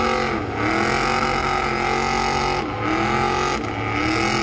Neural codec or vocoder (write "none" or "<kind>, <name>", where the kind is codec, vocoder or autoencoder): none